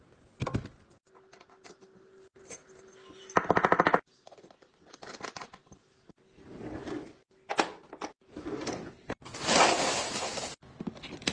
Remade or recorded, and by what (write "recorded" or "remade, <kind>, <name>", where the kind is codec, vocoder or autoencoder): recorded